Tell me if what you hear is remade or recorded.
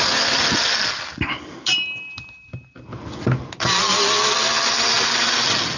recorded